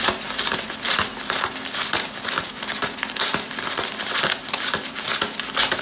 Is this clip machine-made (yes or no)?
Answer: no